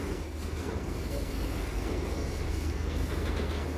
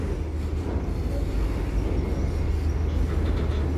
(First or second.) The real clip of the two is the second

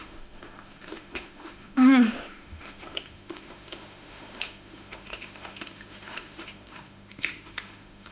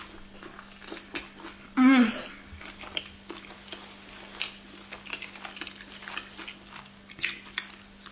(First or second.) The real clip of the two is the second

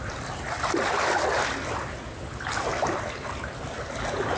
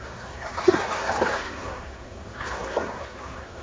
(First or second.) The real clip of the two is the first